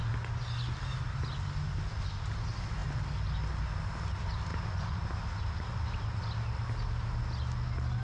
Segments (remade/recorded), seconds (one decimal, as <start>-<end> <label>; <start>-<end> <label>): 0.0-4.5 recorded; 4.5-5.0 remade; 5.0-8.0 recorded